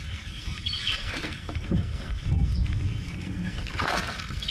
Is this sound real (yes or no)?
no